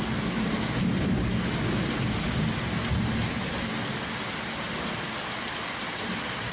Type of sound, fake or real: real